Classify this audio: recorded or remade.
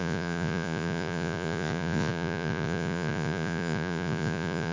remade